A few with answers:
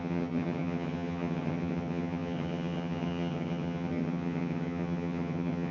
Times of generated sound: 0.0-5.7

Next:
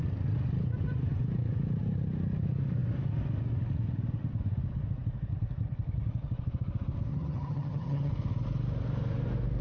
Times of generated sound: 7.1-8.1

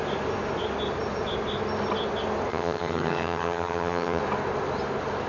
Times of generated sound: 2.5-4.2

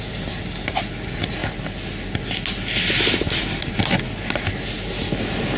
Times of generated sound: none

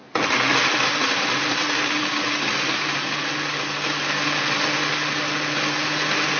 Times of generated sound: none

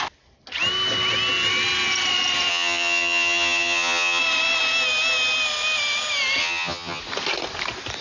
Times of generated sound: 2.5-4.2; 6.4-7.0